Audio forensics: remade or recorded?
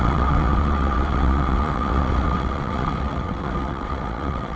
remade